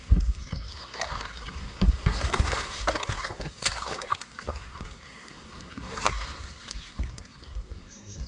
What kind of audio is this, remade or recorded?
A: remade